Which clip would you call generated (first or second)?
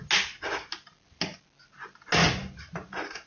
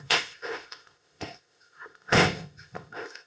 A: second